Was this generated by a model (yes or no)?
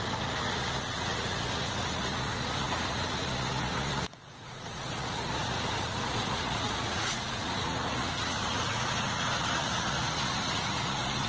yes